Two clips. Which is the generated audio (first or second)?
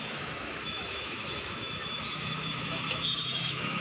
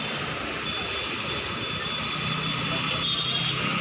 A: first